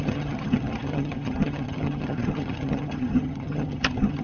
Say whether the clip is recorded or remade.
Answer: remade